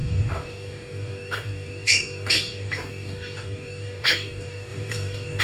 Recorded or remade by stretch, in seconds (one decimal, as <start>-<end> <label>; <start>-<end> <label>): 0.0-5.4 remade